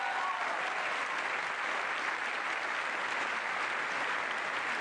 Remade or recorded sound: recorded